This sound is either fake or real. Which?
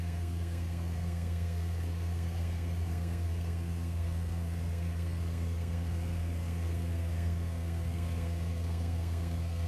fake